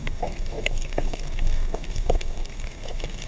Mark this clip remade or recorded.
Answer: remade